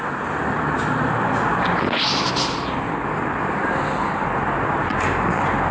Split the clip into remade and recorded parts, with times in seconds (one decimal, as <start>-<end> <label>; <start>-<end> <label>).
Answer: 0.0-5.7 recorded